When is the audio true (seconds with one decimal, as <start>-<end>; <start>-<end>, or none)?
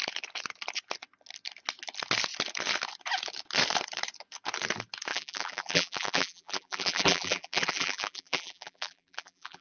0.0-5.1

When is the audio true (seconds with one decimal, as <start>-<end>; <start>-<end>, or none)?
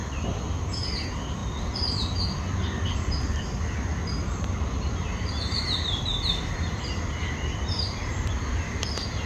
0.0-3.9; 8.8-9.3